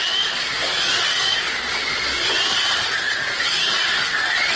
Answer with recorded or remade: recorded